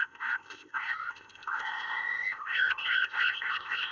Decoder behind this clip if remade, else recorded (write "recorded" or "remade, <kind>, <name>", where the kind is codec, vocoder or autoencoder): remade, codec, ZipCodec